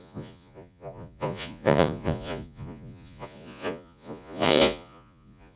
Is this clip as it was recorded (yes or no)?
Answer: no